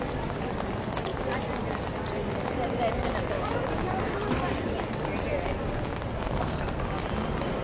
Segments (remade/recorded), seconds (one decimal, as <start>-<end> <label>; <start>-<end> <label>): 0.0-6.1 recorded; 6.1-6.8 remade; 6.8-7.6 recorded

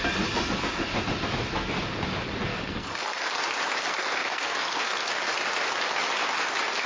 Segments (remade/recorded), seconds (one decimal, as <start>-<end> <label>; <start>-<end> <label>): 0.0-2.5 recorded; 2.5-3.3 remade; 3.3-3.8 recorded; 3.8-5.1 remade; 5.1-6.9 recorded

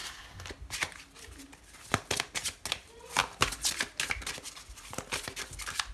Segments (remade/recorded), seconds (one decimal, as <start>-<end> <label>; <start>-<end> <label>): 0.0-0.5 remade; 0.5-5.9 recorded

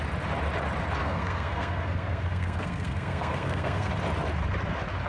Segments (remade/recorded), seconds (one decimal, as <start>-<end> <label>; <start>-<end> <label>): 0.0-1.0 recorded; 1.0-3.9 remade; 3.9-5.1 recorded

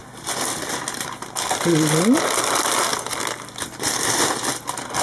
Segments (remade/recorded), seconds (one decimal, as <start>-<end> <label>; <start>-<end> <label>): 0.0-5.0 recorded